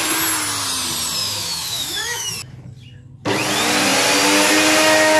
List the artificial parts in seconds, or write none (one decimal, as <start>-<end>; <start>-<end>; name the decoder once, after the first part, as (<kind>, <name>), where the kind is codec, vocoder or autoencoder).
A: 1.2-2.3 (autoencoder, DAC-VAE)